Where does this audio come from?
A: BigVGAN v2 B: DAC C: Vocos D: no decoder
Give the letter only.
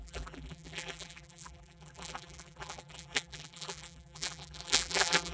A